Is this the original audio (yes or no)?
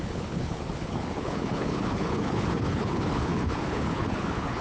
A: no